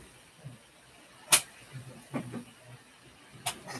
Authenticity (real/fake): real